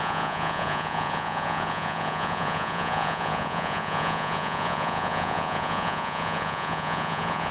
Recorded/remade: remade